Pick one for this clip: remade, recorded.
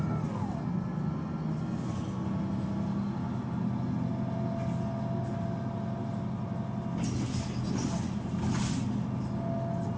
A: recorded